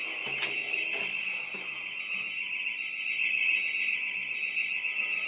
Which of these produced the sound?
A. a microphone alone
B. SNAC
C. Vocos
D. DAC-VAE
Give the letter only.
A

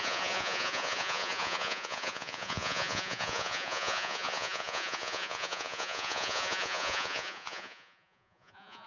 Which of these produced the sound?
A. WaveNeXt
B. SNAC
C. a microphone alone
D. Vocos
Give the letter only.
D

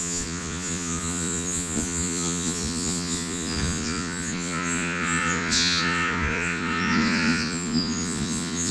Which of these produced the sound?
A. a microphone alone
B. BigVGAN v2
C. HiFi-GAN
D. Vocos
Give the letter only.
D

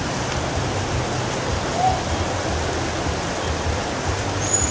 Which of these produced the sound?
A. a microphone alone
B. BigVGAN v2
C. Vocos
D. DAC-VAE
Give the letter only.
A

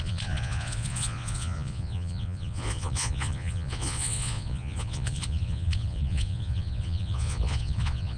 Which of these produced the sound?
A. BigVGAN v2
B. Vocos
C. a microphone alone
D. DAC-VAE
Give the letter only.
B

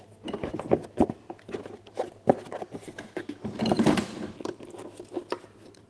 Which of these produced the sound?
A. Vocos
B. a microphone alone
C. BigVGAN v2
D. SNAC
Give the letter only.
B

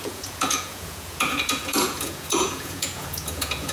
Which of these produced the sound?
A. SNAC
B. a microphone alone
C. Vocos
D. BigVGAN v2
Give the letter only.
C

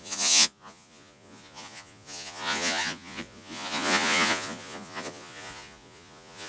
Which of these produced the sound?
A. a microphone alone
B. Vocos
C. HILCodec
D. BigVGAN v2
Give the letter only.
B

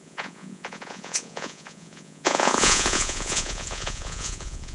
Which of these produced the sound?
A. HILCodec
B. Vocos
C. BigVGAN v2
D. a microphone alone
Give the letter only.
B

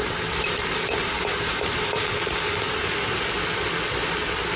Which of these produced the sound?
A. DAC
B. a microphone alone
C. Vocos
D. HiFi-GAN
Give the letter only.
B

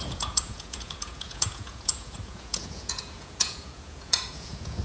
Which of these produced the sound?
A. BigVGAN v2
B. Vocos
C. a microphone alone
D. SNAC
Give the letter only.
B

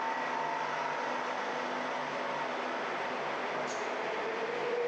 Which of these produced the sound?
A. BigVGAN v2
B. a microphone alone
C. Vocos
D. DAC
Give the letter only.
B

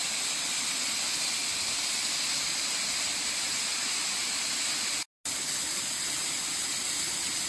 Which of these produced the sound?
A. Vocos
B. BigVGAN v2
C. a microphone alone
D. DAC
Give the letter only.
C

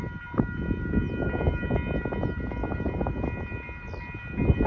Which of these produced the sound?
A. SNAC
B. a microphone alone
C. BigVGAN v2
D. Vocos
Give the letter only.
B